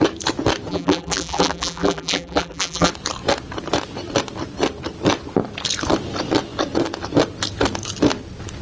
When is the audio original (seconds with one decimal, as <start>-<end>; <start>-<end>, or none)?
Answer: 0.0-0.7; 2.9-8.6